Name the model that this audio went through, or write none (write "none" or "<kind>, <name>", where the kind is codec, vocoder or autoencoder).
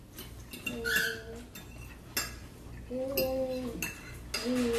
none